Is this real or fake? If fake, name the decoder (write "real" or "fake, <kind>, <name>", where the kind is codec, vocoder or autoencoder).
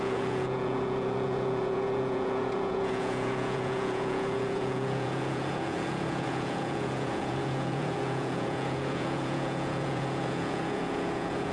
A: fake, vocoder, Vocos